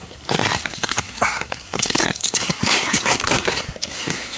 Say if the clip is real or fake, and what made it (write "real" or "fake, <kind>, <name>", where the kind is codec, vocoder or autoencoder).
fake, codec, SNAC